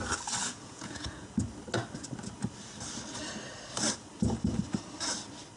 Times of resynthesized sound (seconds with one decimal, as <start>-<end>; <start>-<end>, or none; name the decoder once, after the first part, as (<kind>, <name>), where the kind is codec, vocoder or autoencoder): 0.4-1.3 (vocoder, Vocos)